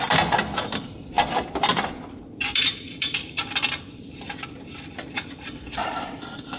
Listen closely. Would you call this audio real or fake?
fake